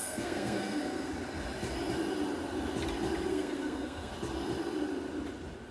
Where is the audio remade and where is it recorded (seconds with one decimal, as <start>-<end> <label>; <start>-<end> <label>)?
0.0-1.1 remade; 1.1-3.3 recorded; 3.3-4.1 remade; 4.1-5.7 recorded